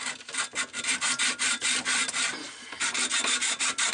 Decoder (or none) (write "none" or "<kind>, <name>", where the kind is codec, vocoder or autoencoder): none